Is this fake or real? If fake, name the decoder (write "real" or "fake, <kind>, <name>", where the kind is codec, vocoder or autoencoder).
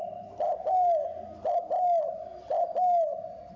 real